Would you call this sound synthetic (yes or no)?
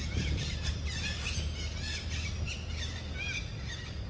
no